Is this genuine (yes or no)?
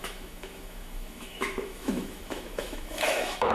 no